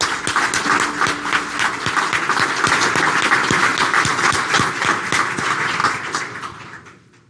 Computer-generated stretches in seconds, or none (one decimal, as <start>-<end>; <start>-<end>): none